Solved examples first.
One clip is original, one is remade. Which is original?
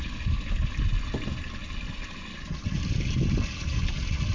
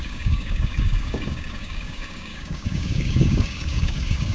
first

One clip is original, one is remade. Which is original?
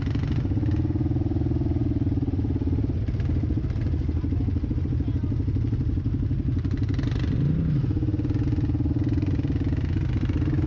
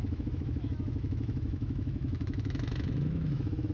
first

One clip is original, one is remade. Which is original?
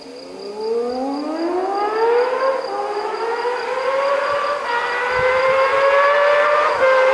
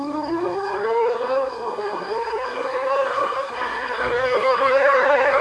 first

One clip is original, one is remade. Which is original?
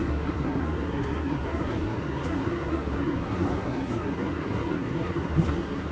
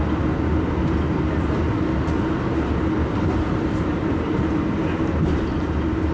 second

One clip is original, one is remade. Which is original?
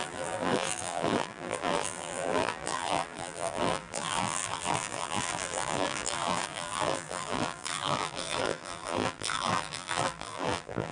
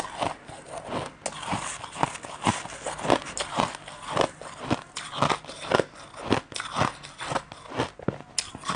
second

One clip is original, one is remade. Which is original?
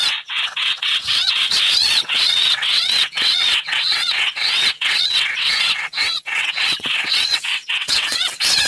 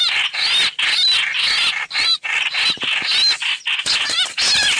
second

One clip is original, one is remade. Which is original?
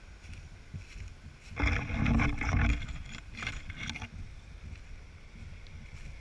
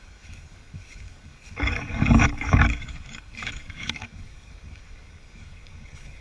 first